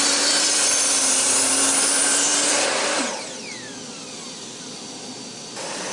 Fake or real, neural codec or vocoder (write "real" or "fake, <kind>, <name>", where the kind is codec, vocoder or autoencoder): fake, vocoder, BigVGAN v2